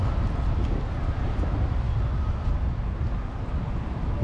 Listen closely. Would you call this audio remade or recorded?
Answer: recorded